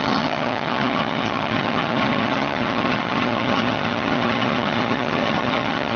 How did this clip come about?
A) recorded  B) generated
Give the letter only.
B